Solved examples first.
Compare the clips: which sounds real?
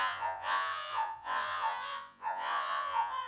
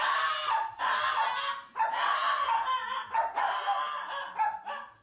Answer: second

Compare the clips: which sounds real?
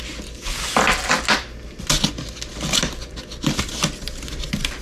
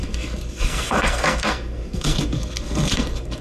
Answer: first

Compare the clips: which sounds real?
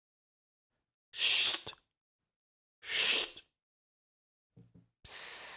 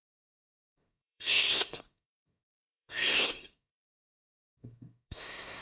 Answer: first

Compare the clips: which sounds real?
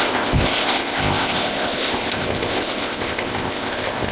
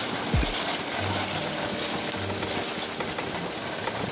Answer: second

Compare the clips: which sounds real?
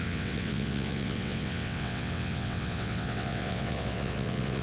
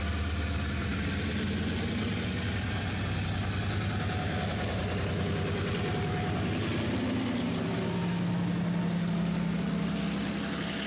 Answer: second